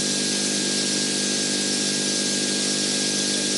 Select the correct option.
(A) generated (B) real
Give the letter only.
B